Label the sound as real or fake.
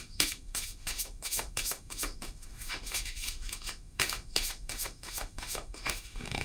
fake